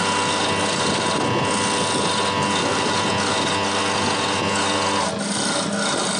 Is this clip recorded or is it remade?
recorded